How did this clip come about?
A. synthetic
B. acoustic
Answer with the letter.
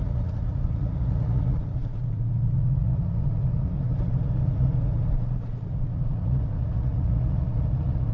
A